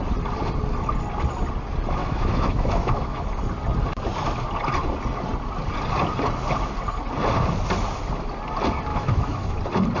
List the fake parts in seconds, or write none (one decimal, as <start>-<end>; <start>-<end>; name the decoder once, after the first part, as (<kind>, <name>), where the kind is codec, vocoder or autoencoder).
2.0-3.3 (autoencoder, DAC-VAE); 8.9-9.6